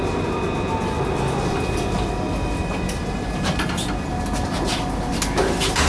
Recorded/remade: recorded